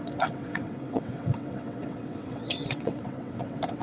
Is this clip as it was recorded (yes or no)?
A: no